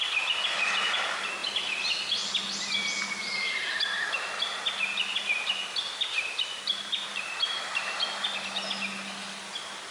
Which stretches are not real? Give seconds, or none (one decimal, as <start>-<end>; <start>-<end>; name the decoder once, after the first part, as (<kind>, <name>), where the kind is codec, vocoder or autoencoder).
5.2-8.3 (vocoder, BigVGAN v2)